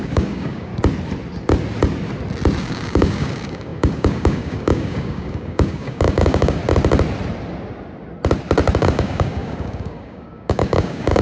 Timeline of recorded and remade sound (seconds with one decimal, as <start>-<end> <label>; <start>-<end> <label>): 0.0-0.7 remade; 0.7-2.6 recorded; 2.6-6.6 remade; 6.6-8.8 recorded; 8.8-11.2 remade